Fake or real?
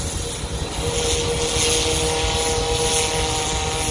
real